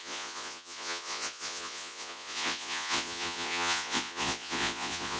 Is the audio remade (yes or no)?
yes